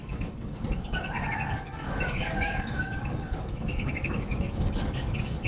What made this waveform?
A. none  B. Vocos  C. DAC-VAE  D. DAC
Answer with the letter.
D